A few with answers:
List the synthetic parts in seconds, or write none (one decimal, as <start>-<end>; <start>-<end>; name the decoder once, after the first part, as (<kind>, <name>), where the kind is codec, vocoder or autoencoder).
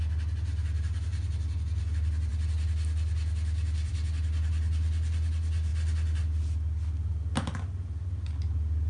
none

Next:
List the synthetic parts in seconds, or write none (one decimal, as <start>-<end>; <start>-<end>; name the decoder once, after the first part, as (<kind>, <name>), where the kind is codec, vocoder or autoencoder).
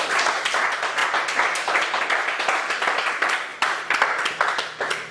none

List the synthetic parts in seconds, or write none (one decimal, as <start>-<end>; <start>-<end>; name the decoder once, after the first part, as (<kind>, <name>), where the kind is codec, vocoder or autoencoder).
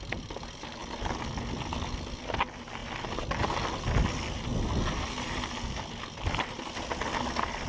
none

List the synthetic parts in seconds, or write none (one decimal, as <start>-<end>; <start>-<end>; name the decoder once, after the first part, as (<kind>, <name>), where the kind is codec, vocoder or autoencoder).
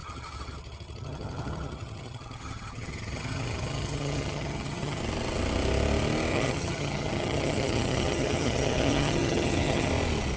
0.0-5.0 (vocoder, HiFi-GAN); 6.3-9.9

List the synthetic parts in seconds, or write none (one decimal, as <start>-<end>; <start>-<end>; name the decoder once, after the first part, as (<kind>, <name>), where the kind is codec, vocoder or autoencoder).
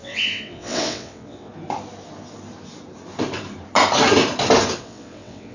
0.0-1.5 (vocoder, WaveNeXt); 4.8-5.5